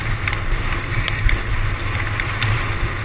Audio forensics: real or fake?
real